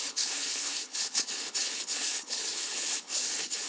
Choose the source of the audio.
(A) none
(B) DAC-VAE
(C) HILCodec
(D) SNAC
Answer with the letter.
C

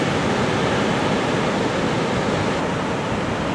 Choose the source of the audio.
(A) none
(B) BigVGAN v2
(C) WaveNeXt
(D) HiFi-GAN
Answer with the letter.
A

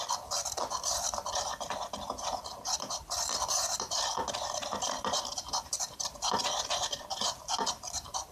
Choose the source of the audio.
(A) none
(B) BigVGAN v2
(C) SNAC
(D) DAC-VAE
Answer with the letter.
B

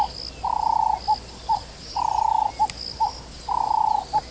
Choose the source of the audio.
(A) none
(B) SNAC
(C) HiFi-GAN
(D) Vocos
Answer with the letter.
A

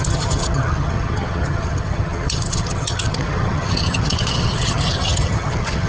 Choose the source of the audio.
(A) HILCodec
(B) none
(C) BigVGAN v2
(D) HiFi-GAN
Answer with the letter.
D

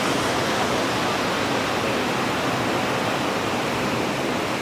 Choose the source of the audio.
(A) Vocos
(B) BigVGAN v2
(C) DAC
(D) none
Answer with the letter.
D